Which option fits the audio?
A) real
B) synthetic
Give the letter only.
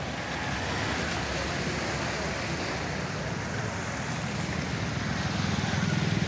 A